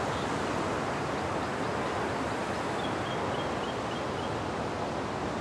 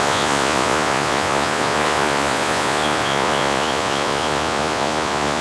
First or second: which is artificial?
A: second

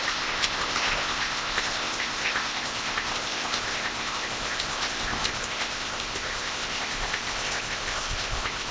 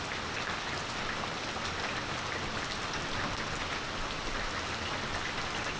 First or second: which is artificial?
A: first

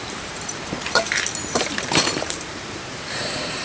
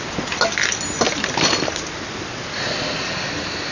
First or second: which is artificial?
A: first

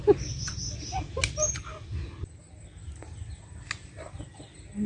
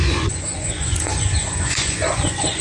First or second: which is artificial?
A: second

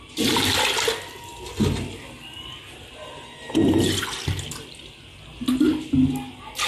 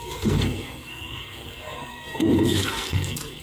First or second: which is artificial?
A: second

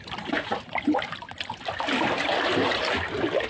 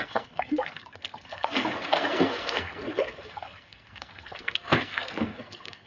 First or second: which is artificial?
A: second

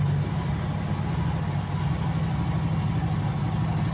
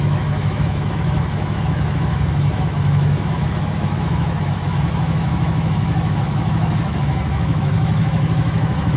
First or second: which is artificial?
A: second